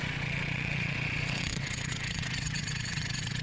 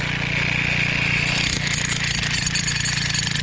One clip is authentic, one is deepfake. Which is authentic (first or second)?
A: second